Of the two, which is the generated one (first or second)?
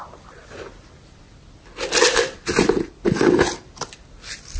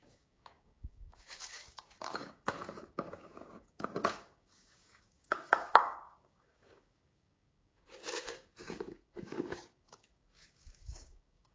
second